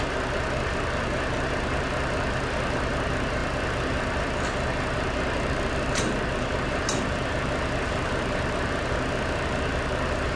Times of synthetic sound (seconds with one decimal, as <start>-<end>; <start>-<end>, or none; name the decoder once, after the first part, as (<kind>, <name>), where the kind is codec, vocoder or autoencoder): none